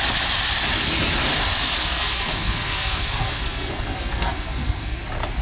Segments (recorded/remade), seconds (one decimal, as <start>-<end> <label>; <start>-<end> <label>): 0.0-1.8 recorded; 1.8-5.0 remade; 5.0-5.4 recorded

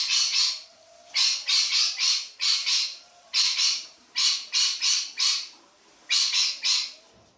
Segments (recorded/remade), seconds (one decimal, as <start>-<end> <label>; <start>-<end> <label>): 0.0-0.7 recorded; 0.7-1.2 remade; 1.2-2.6 recorded; 2.6-5.6 remade; 5.6-7.4 recorded

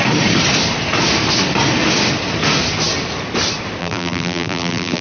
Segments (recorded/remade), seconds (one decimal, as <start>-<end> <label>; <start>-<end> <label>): 0.0-3.8 recorded; 3.8-5.0 remade

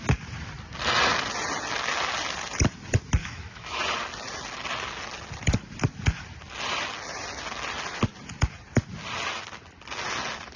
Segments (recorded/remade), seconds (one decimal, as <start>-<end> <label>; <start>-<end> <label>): 0.0-3.2 recorded; 3.2-3.8 remade; 3.8-10.6 recorded

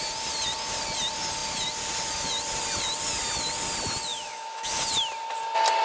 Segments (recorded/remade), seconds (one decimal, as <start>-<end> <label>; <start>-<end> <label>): 0.0-4.1 recorded; 4.1-4.7 remade; 4.7-5.8 recorded